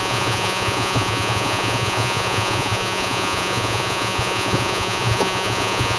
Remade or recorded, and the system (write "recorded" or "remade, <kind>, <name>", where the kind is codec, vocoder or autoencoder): remade, vocoder, Vocos